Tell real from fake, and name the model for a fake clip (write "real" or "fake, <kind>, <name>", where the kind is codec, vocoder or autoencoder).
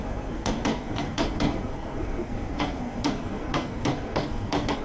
fake, codec, SNAC